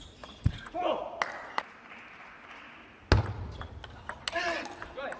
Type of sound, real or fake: real